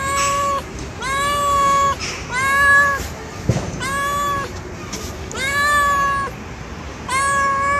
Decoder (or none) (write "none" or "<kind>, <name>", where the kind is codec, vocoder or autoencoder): none